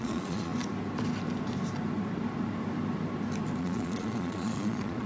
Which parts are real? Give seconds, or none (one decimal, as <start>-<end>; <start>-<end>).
0.5-3.6